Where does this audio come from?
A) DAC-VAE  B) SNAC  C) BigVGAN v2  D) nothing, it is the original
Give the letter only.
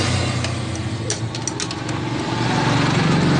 D